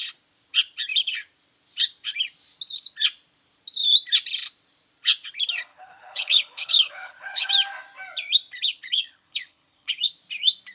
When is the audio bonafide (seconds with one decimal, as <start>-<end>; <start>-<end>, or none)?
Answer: 0.0-5.7; 7.5-8.8; 10.0-10.7